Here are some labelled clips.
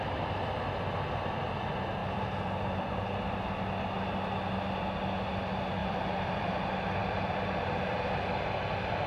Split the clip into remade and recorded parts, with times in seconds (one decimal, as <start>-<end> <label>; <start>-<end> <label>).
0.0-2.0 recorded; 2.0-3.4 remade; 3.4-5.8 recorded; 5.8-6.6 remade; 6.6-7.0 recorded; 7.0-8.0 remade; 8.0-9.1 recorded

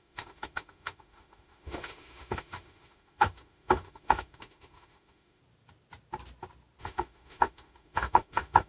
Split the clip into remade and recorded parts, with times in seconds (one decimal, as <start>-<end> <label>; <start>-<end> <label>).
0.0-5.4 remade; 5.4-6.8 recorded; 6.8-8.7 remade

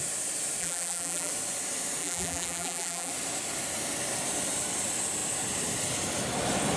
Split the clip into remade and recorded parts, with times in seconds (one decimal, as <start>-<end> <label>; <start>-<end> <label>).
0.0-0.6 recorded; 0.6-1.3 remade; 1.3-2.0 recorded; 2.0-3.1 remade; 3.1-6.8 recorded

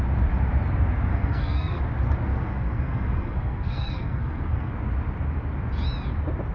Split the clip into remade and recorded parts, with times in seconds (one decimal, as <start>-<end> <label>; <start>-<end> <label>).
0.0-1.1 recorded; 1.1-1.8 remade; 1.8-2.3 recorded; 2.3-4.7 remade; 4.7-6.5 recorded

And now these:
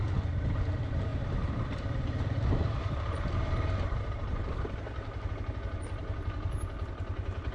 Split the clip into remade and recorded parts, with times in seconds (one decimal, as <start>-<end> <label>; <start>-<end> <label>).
0.0-1.1 recorded; 1.1-5.3 remade; 5.3-7.5 recorded